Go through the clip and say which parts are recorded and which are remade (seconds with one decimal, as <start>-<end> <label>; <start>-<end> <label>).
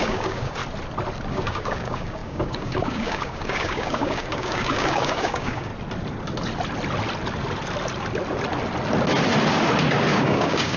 0.0-0.6 remade; 0.6-1.3 recorded; 1.3-5.7 remade; 5.7-10.1 recorded; 10.1-10.8 remade